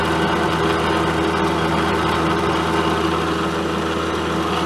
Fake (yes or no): no